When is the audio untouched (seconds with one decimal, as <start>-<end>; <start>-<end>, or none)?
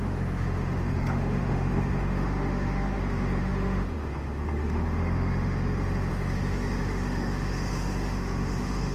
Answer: none